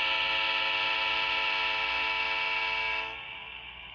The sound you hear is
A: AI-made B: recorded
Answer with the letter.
B